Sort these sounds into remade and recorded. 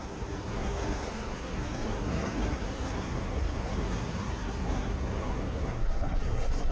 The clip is remade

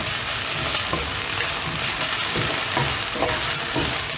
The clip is recorded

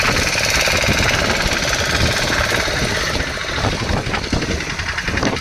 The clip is recorded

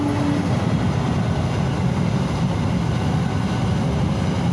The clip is recorded